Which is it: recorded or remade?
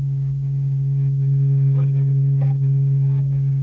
remade